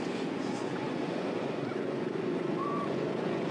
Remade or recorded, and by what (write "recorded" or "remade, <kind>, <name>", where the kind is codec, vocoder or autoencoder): remade, vocoder, Vocos